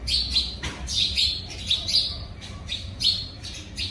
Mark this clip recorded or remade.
recorded